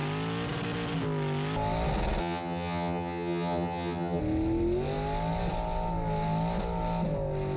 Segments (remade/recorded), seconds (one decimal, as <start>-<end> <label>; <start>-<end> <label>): 0.0-2.2 recorded; 2.2-4.2 remade; 4.2-7.6 recorded